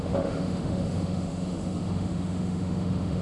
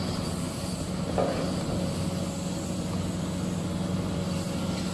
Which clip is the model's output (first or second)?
first